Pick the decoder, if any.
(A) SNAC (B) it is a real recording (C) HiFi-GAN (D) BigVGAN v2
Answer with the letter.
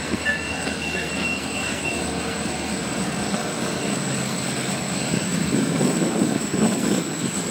A